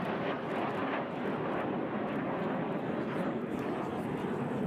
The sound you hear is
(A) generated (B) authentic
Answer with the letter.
B